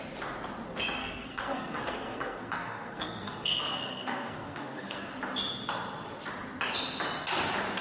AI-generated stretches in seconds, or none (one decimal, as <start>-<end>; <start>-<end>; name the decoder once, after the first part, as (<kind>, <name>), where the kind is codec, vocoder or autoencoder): 1.0-5.1 (codec, SNAC)